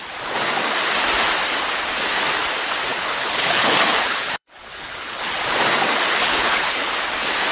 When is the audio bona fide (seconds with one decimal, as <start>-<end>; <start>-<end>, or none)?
0.0-2.9; 5.2-6.2; 6.9-7.5